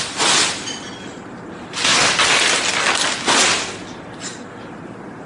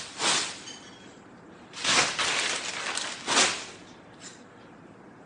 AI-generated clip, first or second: second